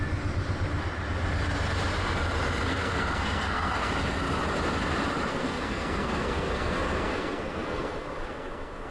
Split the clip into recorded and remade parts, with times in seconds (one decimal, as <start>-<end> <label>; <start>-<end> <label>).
0.0-2.7 recorded; 2.7-3.9 remade; 3.9-5.3 recorded; 5.3-8.9 remade